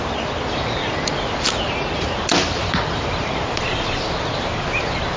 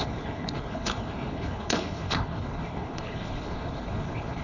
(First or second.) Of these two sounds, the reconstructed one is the second